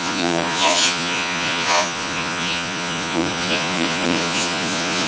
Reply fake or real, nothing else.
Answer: fake